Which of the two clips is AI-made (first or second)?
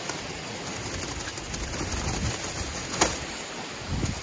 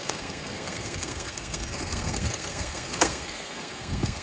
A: second